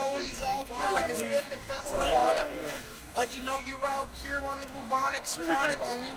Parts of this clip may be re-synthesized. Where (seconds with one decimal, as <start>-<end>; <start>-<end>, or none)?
0.0-6.2

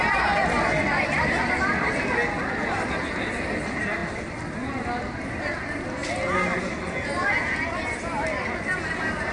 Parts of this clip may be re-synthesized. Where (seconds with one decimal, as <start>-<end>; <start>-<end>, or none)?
none

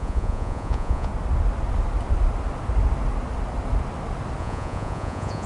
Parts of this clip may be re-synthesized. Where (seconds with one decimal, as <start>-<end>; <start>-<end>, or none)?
0.0-1.1; 4.4-5.5

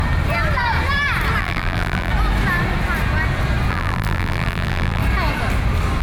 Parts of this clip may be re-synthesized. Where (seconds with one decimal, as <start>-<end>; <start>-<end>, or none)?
1.4-2.1; 3.7-5.0

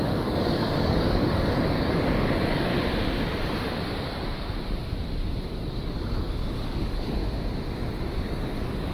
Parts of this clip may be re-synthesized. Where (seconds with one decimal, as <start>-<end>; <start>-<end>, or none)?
0.0-2.7; 5.7-7.2; 8.0-8.9

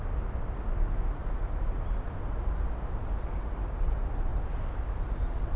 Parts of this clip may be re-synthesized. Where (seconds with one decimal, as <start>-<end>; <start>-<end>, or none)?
none

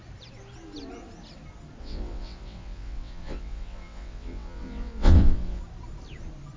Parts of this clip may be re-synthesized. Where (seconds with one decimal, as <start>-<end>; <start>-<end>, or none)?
1.8-5.6